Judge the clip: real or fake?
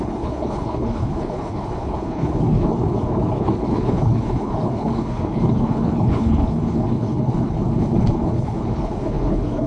fake